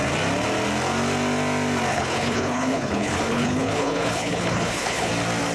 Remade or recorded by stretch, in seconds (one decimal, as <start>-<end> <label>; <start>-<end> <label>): 0.0-1.9 recorded; 1.9-5.1 remade; 5.1-5.5 recorded